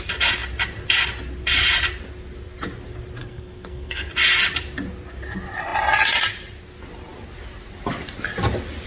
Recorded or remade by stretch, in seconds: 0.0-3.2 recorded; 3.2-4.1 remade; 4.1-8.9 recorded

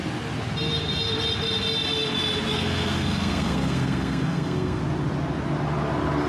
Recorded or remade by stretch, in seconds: 0.0-2.5 recorded; 2.5-4.8 remade; 4.8-6.3 recorded